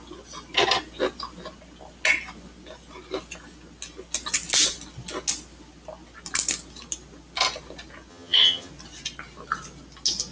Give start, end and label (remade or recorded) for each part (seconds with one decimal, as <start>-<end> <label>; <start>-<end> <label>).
0.0-8.1 recorded; 8.1-8.7 remade; 8.7-10.3 recorded